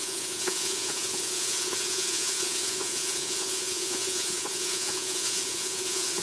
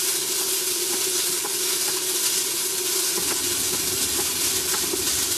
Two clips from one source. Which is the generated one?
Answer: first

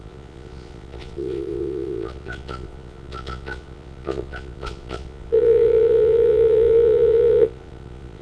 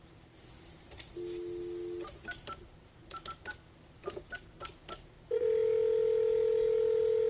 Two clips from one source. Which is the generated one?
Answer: first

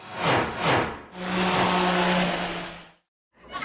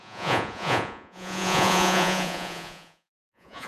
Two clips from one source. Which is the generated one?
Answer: second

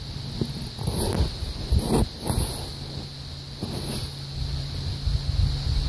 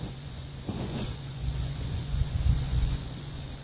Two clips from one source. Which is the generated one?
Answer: second